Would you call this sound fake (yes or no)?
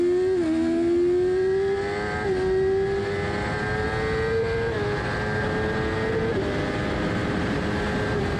no